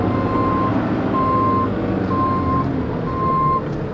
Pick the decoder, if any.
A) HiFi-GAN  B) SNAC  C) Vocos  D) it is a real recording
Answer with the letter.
D